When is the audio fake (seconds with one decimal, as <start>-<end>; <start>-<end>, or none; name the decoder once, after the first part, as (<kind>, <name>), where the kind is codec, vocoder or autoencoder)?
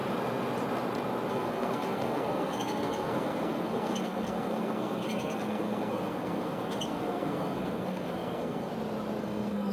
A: 1.3-8.7 (codec, SNAC); 9.2-9.7